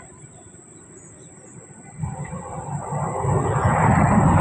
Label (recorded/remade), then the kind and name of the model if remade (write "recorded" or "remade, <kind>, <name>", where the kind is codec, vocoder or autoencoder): recorded